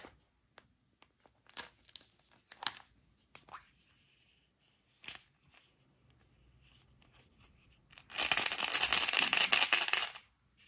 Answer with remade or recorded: recorded